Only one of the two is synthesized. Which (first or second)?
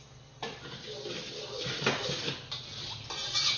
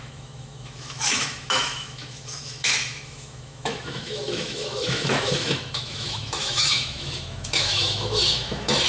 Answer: second